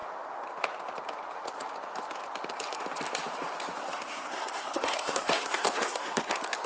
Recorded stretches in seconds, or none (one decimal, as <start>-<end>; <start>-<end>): 0.0-3.8; 6.3-6.7

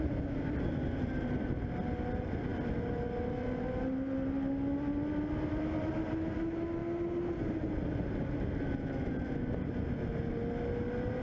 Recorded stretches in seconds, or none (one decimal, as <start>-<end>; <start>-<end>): 0.0-11.2

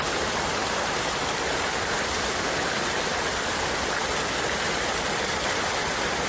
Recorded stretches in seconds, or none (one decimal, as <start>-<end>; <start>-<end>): 0.0-6.3

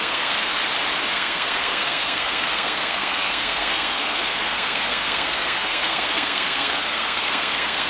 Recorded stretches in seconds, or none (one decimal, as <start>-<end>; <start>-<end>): 0.6-1.1

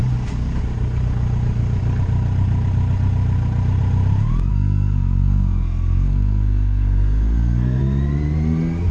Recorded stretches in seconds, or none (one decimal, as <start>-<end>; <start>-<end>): 0.0-4.5; 7.8-8.9